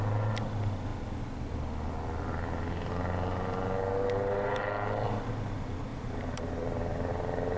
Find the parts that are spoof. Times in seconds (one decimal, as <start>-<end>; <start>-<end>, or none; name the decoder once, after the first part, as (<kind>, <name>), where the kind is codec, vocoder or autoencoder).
5.9-7.1 (vocoder, BigVGAN v2)